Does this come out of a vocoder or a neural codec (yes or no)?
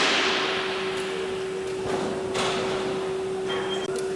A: no